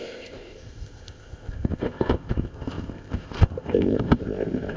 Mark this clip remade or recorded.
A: remade